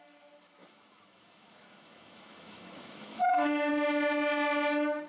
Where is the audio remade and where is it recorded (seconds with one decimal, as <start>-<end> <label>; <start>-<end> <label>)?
0.0-0.6 recorded; 0.6-3.7 remade; 3.7-5.1 recorded